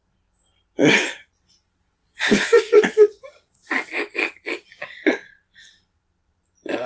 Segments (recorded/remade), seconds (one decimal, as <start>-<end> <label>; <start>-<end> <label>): 0.0-2.0 recorded; 2.0-3.2 remade; 3.2-6.9 recorded